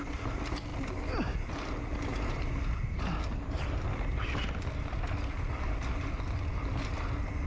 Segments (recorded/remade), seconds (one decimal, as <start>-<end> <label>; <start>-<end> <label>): 0.0-2.1 recorded; 2.1-2.7 remade; 2.7-7.5 recorded